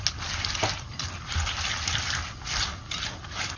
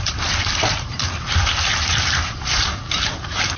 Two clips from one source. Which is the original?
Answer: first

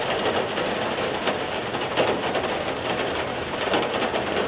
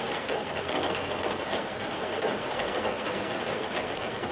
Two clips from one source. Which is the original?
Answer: first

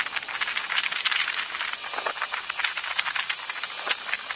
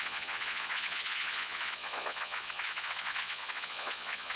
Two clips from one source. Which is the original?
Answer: first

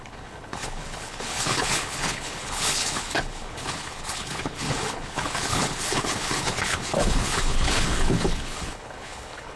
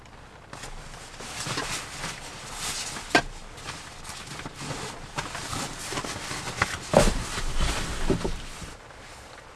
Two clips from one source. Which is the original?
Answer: second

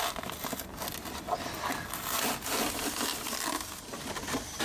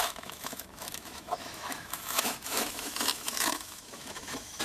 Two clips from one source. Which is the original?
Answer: first